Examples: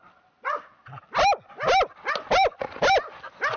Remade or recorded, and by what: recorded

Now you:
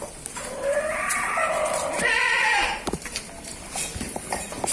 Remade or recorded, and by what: remade, vocoder, BigVGAN v2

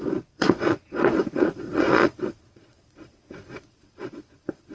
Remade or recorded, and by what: remade, vocoder, Vocos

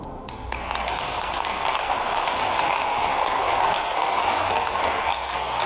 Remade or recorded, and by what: remade, codec, SNAC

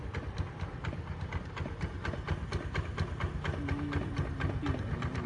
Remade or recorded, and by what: recorded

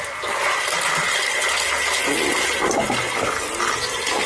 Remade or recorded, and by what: recorded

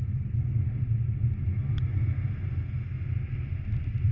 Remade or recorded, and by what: recorded